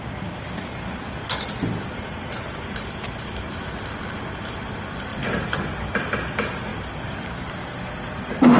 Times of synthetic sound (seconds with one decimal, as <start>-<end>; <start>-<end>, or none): none